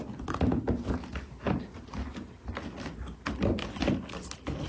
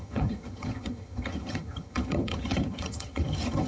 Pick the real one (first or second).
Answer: first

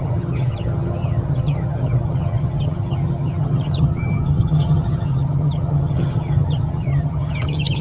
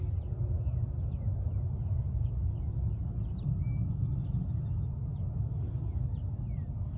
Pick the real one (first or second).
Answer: second